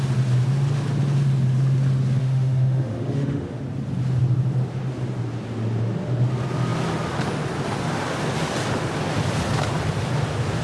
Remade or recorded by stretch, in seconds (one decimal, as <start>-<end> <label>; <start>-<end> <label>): 0.0-2.2 recorded; 2.2-3.6 remade; 3.6-10.6 recorded